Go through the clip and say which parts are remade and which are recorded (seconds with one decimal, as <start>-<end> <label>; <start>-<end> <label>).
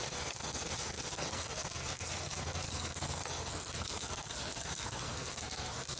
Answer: 0.0-6.0 remade